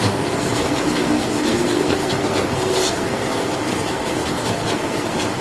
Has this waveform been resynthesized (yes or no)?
yes